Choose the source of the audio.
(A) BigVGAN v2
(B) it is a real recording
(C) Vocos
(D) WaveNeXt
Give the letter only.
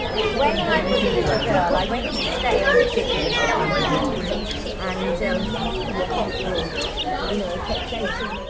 B